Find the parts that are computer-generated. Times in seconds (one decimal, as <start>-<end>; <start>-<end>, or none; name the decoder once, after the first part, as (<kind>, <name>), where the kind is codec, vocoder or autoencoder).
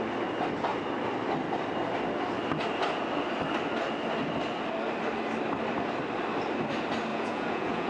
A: 7.1-7.9 (vocoder, Vocos)